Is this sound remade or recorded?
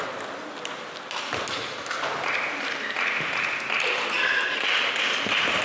recorded